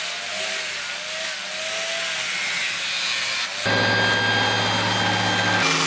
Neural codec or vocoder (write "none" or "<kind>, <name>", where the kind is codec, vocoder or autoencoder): none